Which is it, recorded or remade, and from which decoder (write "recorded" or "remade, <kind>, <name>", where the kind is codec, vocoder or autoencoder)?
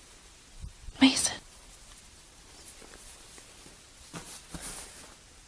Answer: recorded